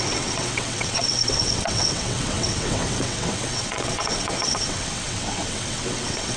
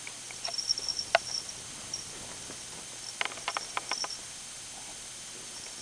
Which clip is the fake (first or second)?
first